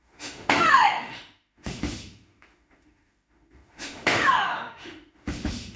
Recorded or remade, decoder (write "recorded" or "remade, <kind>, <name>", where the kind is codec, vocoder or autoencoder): remade, autoencoder, DAC-VAE